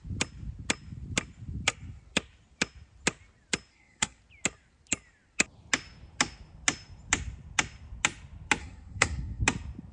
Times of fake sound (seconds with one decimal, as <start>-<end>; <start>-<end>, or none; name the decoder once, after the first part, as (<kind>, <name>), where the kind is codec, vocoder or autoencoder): 3.7-4.2 (codec, SNAC); 8.6-9.4